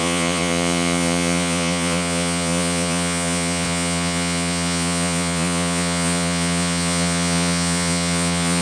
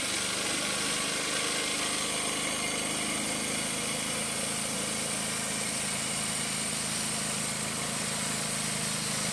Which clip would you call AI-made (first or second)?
first